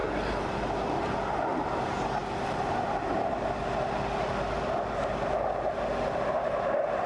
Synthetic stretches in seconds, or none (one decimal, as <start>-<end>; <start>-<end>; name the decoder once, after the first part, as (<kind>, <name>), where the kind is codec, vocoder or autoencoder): none

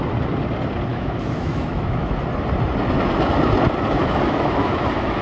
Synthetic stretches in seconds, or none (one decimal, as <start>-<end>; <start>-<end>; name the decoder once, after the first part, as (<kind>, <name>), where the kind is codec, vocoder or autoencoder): 0.9-2.2 (autoencoder, DAC-VAE); 4.0-5.2